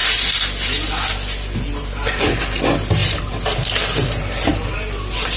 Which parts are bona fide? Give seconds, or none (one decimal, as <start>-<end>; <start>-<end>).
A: 0.0-5.4